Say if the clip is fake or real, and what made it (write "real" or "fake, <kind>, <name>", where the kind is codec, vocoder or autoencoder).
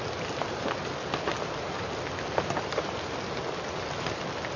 real